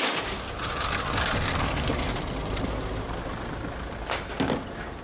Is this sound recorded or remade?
recorded